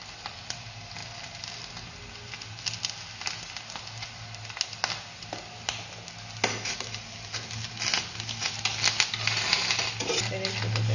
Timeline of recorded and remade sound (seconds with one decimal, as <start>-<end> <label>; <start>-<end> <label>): 0.0-10.9 recorded